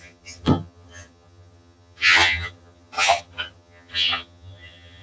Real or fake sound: fake